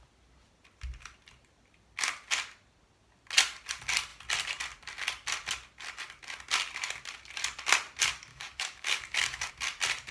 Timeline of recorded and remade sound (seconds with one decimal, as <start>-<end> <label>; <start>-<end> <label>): 0.0-8.3 recorded; 8.3-9.5 remade; 9.5-10.1 recorded